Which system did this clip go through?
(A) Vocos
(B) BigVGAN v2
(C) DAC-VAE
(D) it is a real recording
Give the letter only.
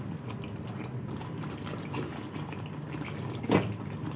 D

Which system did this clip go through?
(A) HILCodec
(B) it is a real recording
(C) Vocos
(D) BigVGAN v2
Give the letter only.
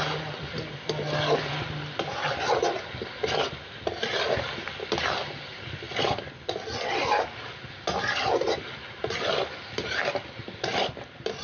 B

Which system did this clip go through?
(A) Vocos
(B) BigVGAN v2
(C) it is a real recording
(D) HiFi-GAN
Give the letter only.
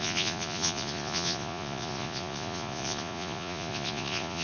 A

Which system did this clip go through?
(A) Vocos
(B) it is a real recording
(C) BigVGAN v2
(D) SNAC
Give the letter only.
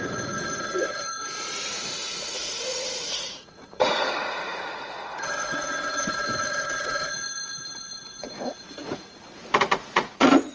A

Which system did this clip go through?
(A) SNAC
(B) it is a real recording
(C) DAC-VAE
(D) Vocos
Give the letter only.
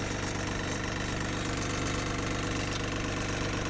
B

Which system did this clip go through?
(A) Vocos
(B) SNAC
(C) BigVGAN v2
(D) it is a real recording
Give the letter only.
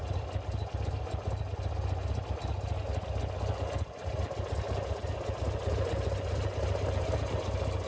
D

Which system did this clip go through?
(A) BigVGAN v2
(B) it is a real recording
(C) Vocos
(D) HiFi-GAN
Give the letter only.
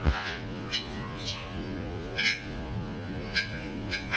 C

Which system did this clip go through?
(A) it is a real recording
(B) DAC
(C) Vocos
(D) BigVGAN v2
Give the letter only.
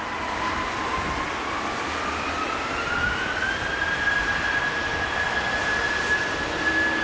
A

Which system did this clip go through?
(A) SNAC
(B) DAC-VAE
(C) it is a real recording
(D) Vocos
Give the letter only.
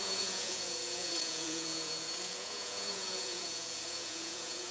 D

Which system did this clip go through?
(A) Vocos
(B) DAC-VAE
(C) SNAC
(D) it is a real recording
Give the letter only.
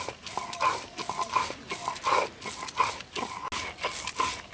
D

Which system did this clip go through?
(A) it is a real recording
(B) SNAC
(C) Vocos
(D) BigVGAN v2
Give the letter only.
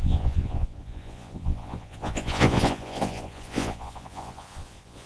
C